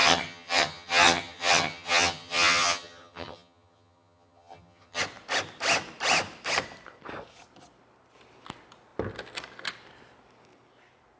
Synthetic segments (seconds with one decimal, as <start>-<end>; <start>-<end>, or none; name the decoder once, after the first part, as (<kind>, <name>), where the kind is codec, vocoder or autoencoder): 0.0-5.0 (vocoder, HiFi-GAN)